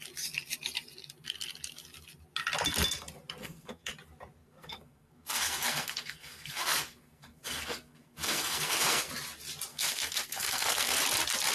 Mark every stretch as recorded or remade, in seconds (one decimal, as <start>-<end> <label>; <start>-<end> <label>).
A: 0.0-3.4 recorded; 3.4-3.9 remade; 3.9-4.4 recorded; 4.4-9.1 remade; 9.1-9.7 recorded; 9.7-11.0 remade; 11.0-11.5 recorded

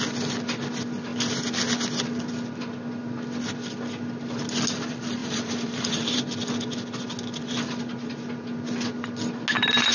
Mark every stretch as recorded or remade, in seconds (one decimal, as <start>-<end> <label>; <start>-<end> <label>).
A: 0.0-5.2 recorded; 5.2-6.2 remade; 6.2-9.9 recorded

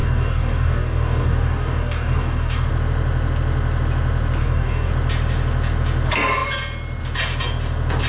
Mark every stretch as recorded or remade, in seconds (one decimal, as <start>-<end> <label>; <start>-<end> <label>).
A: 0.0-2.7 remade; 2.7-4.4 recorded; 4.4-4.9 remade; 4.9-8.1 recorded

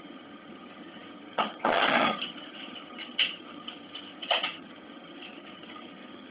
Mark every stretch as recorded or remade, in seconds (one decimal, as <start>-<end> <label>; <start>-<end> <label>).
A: 0.0-6.3 remade

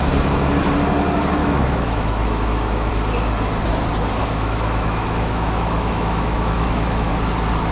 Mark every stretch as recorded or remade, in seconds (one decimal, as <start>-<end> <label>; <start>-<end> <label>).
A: 0.0-1.4 recorded; 1.4-2.9 remade; 2.9-4.2 recorded; 4.2-7.1 remade; 7.1-7.7 recorded

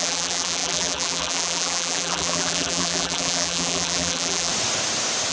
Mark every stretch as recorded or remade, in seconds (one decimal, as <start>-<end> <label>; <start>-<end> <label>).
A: 0.0-4.5 remade; 4.5-5.3 recorded

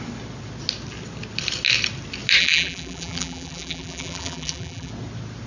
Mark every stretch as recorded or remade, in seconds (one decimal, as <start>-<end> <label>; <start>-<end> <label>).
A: 0.0-2.4 recorded; 2.4-4.9 remade; 4.9-5.5 recorded

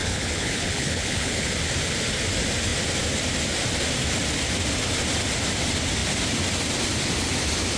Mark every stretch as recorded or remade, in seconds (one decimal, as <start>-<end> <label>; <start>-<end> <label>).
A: 0.0-1.5 remade; 1.5-7.8 recorded